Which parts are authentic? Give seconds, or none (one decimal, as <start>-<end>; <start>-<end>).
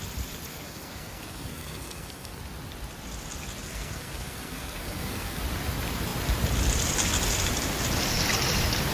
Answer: 0.0-0.5; 2.4-3.6; 5.4-8.9